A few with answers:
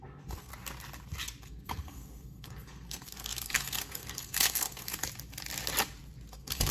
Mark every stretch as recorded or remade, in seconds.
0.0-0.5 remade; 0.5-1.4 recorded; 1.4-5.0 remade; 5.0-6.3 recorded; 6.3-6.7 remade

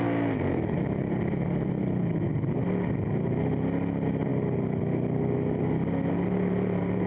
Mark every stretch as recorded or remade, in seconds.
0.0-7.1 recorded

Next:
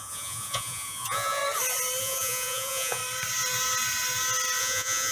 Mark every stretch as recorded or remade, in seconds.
0.0-1.4 remade; 1.4-2.0 recorded; 2.0-3.0 remade; 3.0-4.6 recorded; 4.6-5.1 remade

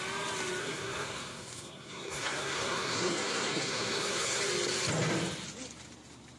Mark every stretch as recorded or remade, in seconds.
0.0-0.6 recorded; 0.6-4.4 remade; 4.4-6.4 recorded

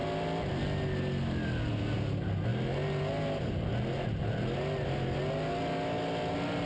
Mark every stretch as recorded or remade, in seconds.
0.0-6.7 recorded